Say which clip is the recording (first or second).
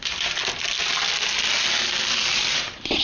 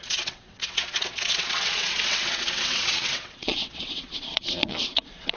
first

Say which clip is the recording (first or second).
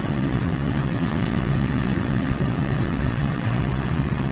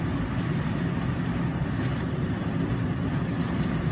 second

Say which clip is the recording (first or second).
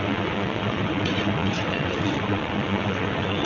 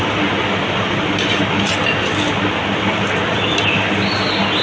second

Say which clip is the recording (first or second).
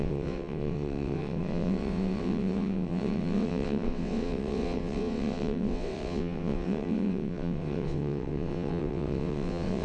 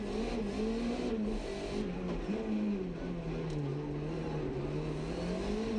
second